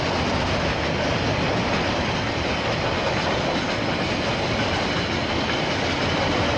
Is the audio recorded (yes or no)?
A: yes